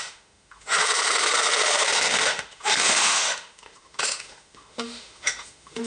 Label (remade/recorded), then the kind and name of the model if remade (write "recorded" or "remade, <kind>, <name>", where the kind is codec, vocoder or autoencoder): remade, autoencoder, DAC-VAE